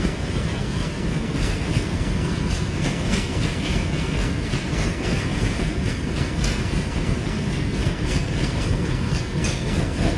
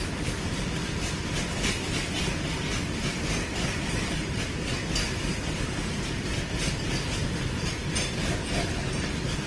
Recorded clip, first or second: second